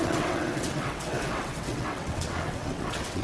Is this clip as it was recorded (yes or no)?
no